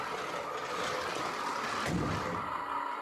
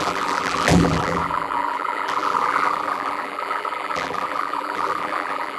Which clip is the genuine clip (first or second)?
first